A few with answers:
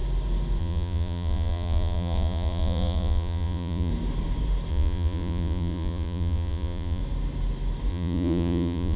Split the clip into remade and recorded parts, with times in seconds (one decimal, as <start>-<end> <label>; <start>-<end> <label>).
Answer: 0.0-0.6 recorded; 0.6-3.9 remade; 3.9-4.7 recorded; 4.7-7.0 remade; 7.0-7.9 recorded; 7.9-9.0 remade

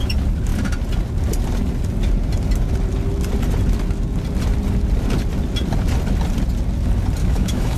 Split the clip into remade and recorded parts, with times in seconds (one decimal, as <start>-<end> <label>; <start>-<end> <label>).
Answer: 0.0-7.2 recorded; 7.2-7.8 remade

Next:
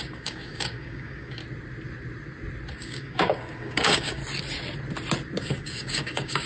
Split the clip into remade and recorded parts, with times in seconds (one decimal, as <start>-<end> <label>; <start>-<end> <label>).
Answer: 0.0-1.4 remade; 1.4-2.7 recorded; 2.7-4.2 remade; 4.2-5.4 recorded; 5.4-6.5 remade

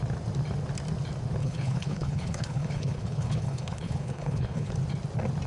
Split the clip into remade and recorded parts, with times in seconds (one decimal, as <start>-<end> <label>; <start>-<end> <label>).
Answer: 0.0-1.4 recorded; 1.4-4.7 remade; 4.7-5.5 recorded

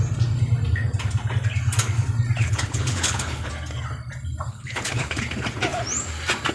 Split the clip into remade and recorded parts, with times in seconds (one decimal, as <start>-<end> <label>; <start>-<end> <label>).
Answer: 0.0-2.4 recorded; 2.4-3.5 remade; 3.5-4.5 recorded; 4.5-5.2 remade; 5.2-6.5 recorded